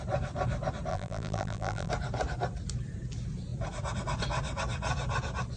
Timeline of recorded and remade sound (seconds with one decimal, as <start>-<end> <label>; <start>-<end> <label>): 0.0-0.9 recorded; 0.9-1.9 remade; 1.9-5.6 recorded